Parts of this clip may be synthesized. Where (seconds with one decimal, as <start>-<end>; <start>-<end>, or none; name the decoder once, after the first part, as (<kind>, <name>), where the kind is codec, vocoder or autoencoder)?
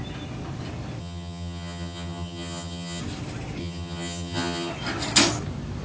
1.0-3.0 (vocoder, HiFi-GAN); 3.6-4.7